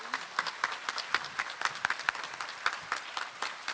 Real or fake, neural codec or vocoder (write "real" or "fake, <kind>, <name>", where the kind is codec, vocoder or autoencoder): real